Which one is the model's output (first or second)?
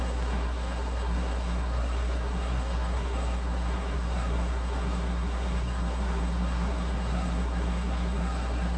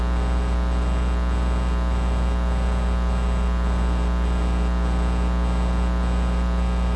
first